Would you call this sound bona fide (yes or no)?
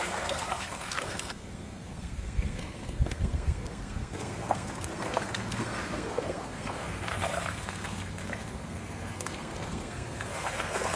no